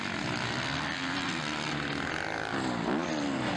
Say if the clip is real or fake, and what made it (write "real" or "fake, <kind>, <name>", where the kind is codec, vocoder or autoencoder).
real